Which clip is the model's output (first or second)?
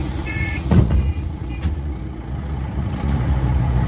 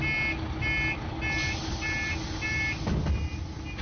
first